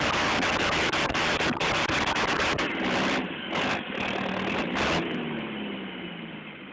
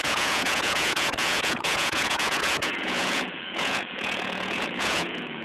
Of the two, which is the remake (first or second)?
second